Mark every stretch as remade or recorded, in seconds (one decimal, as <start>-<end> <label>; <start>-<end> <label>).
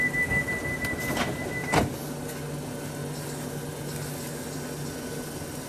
0.0-5.7 recorded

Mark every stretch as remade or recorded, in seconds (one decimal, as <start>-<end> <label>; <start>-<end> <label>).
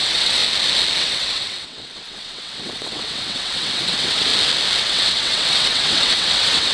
0.0-0.4 remade; 0.4-1.0 recorded; 1.0-4.3 remade; 4.3-4.8 recorded; 4.8-6.7 remade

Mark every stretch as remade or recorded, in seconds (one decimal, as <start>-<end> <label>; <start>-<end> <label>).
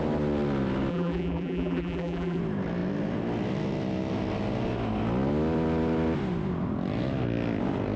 0.0-0.9 recorded; 0.9-2.4 remade; 2.4-8.0 recorded